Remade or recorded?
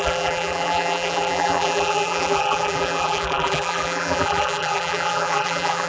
remade